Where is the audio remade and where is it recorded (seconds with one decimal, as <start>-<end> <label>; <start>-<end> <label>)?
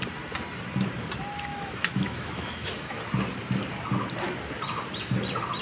0.0-1.5 recorded; 1.5-3.0 remade; 3.0-5.6 recorded